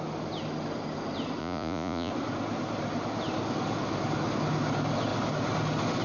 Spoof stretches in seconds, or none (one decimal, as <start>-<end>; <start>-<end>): 1.4-2.1